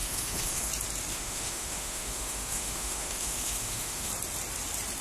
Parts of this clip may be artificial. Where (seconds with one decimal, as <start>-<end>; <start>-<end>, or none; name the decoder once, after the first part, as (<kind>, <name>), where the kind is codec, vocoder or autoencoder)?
0.0-0.7 (autoencoder, DAC-VAE); 1.1-4.1